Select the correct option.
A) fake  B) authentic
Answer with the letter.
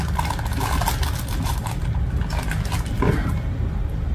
B